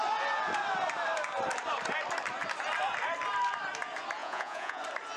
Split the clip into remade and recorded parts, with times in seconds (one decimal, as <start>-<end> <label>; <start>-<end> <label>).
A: 0.0-4.2 recorded; 4.2-4.8 remade; 4.8-5.2 recorded